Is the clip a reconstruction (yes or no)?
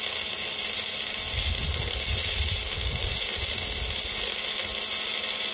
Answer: no